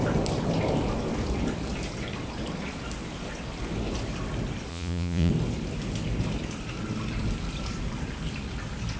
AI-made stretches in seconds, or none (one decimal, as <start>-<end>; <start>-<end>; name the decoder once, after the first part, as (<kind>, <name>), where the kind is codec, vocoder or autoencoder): 4.7-5.3 (vocoder, Vocos)